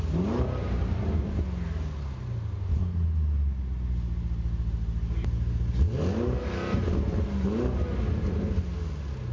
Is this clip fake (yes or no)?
no